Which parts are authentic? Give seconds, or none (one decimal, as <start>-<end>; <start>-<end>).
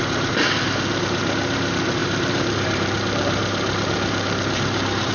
0.0-2.0